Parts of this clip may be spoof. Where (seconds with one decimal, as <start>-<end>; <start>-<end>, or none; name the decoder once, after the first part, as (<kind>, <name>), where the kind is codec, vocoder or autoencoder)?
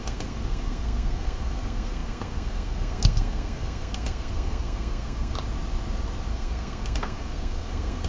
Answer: 0.0-5.3 (codec, SNAC); 6.3-8.1